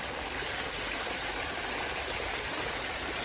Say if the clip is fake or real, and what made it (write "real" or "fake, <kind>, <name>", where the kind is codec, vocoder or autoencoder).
real